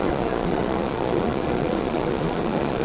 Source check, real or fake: fake